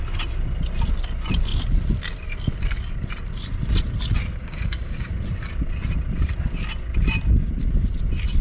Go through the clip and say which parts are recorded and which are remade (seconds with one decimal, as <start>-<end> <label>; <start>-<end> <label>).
0.0-4.4 recorded; 4.4-5.1 remade; 5.1-8.4 recorded